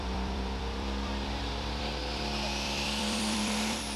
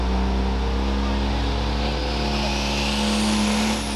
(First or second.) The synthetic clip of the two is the first